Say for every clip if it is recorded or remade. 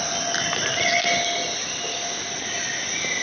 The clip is recorded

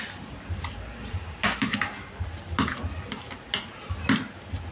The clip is recorded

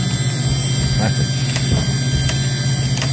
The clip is recorded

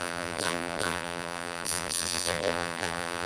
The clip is remade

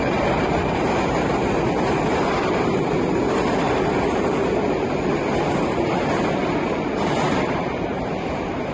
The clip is remade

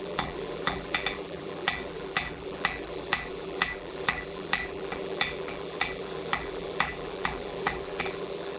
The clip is remade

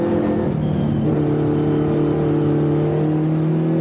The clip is recorded